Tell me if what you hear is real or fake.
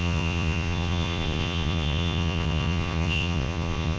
fake